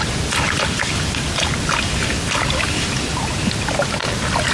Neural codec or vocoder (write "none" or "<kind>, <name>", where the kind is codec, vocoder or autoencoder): none